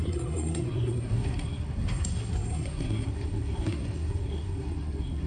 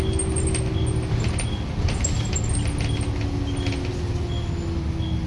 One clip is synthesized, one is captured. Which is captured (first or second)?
second